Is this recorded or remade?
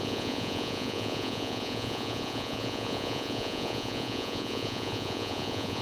remade